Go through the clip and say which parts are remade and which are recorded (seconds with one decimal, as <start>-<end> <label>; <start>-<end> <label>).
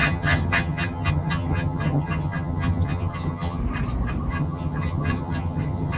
0.0-3.6 remade; 3.6-4.3 recorded; 4.3-6.0 remade